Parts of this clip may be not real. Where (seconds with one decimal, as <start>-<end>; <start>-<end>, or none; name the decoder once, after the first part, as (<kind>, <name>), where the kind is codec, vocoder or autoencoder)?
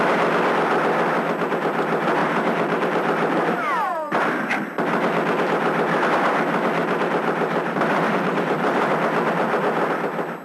2.2-4.2 (vocoder, BigVGAN v2); 6.8-8.9